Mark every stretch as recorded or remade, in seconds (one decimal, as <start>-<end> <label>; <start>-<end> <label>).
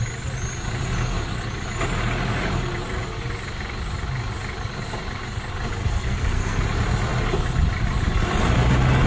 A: 0.0-5.8 recorded; 5.8-6.6 remade; 6.6-9.1 recorded